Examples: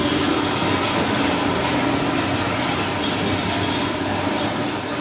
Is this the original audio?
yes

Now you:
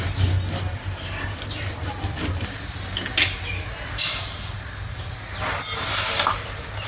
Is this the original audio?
yes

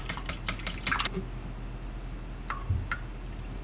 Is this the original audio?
yes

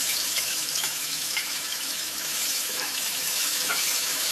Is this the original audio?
no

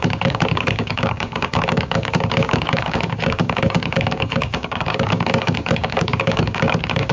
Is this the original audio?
no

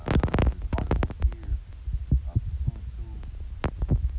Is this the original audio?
yes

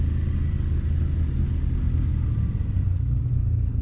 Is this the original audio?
yes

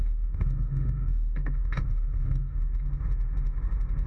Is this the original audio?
no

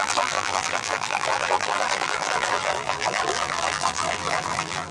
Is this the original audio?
no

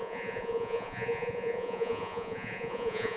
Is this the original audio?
no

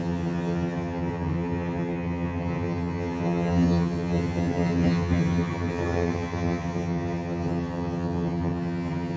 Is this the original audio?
no